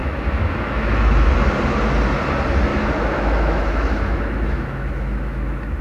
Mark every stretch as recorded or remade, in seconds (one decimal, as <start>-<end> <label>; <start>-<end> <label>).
0.0-1.3 remade; 1.3-2.7 recorded; 2.7-5.8 remade

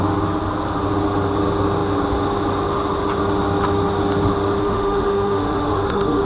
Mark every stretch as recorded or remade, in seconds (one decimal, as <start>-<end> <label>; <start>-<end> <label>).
0.0-4.6 recorded; 4.6-6.2 remade

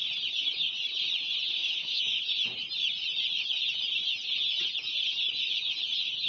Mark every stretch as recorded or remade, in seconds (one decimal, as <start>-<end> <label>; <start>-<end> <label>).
0.0-1.6 recorded; 1.6-2.2 remade; 2.2-6.3 recorded

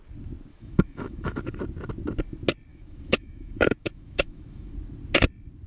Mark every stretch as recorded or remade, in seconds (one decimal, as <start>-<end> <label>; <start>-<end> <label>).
0.0-0.5 recorded; 0.5-1.6 remade; 1.6-2.7 recorded; 2.7-4.7 remade; 4.7-5.7 recorded

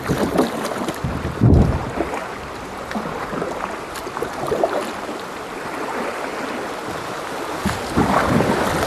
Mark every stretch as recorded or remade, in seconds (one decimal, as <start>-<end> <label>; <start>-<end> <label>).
0.0-8.9 recorded

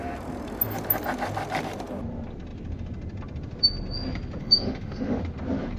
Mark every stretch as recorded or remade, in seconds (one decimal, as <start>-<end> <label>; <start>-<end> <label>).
0.0-4.4 recorded; 4.4-5.2 remade; 5.2-5.8 recorded